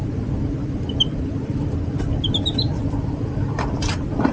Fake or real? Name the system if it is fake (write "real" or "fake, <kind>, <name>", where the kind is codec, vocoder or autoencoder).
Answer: fake, vocoder, BigVGAN v2